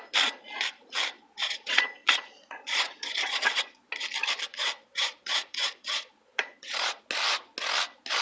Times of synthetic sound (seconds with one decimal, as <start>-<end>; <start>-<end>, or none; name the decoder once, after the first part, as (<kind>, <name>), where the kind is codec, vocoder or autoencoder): 1.2-3.9 (vocoder, Vocos); 4.5-7.0